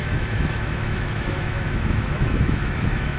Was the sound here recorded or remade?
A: remade